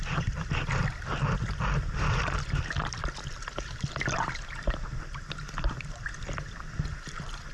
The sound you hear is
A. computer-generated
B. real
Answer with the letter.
B